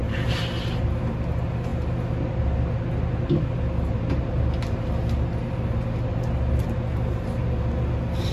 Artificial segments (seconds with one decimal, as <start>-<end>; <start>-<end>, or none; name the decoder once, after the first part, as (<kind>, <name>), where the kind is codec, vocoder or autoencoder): none